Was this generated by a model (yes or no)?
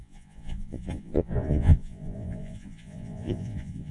yes